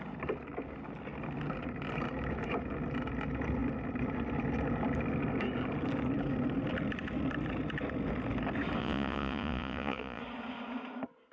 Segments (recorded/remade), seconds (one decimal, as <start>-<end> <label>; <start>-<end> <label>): 0.0-8.8 recorded; 8.8-10.2 remade; 10.2-11.3 recorded